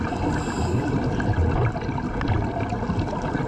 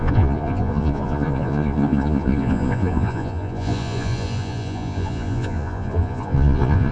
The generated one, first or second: second